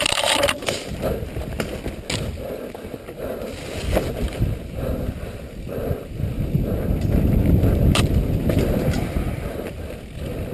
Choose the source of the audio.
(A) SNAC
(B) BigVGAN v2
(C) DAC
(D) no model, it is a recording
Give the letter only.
D